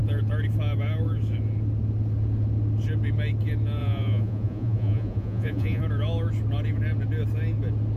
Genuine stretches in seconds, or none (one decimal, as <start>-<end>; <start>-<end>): 0.0-3.8; 5.8-8.0